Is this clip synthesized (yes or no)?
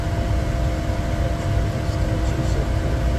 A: no